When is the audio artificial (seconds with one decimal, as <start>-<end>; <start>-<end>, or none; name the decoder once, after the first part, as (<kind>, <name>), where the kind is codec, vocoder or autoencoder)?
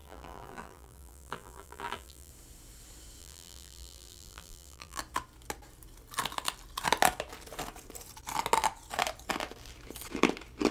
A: 0.0-2.3 (vocoder, BigVGAN v2); 3.2-5.0